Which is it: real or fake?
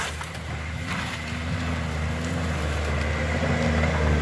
real